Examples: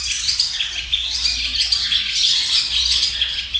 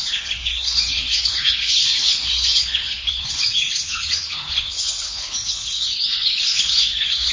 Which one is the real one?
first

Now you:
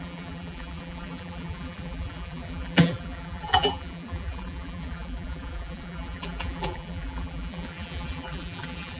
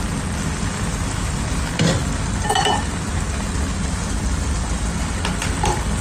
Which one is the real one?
second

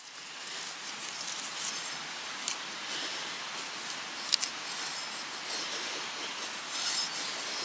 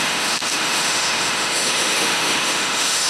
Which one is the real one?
first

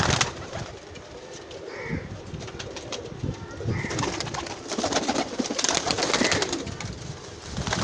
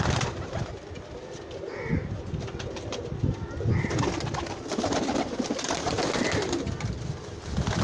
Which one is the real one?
second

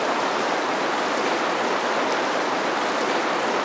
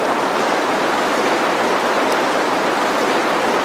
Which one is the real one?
first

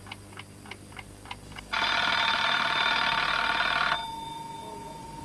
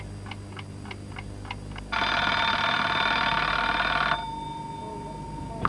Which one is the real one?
second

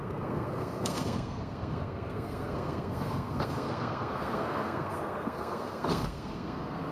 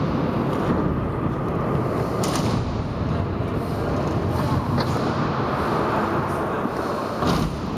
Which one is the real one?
second